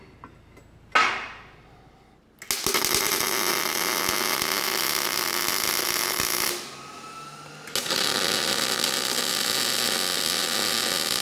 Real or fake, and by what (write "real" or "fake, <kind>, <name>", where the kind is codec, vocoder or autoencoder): real